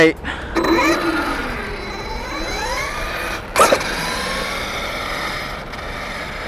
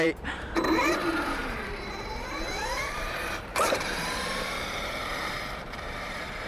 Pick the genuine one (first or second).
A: first